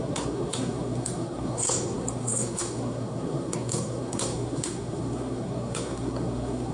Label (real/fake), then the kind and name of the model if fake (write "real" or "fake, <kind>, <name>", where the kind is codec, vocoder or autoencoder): fake, codec, SNAC